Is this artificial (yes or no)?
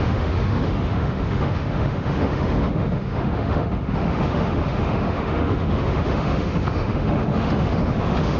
yes